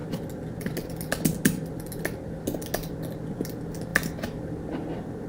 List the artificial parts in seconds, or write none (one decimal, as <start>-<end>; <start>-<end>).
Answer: none